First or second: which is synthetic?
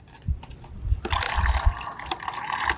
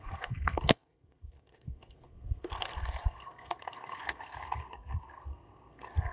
second